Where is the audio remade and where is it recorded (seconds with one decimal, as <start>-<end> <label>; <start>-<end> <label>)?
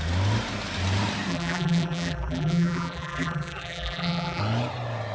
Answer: 0.0-1.3 recorded; 1.3-4.4 remade; 4.4-5.1 recorded